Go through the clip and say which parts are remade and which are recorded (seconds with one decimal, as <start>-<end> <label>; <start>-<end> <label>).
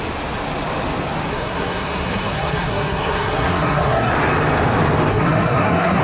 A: 0.0-1.3 recorded; 1.3-4.1 remade; 4.1-5.1 recorded; 5.1-6.0 remade